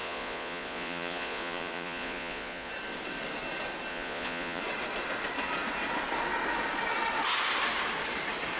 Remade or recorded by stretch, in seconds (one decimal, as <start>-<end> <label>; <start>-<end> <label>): 0.0-2.7 remade; 2.7-3.9 recorded; 3.9-4.6 remade; 4.6-8.6 recorded